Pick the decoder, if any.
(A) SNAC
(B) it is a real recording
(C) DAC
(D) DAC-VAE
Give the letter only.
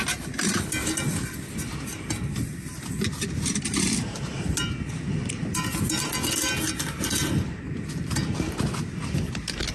B